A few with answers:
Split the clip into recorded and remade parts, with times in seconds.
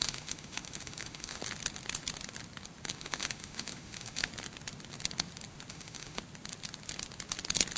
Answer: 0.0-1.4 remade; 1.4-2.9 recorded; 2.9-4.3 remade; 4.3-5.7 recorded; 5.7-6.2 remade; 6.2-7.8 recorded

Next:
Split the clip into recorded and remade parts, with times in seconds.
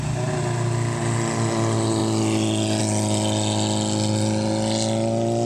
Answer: 0.0-5.5 recorded